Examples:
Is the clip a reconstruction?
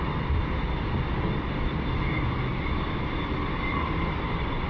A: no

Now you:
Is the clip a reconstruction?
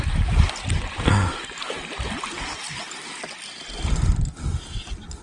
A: no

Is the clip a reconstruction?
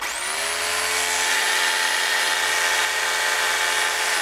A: no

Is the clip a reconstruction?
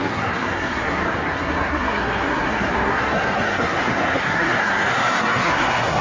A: yes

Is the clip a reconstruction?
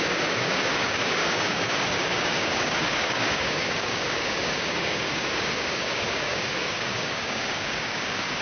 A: yes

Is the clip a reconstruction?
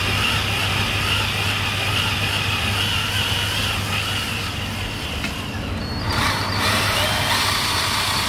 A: no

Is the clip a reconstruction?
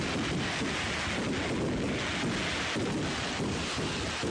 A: no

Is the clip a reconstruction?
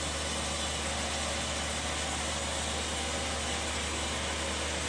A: no